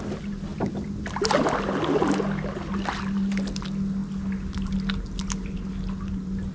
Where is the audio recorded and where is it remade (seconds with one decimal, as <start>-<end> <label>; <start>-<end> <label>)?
0.0-6.5 recorded